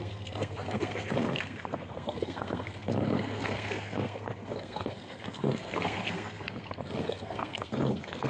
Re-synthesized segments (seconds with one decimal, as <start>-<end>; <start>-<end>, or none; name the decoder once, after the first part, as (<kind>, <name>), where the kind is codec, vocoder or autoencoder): 0.0-8.3 (codec, SNAC)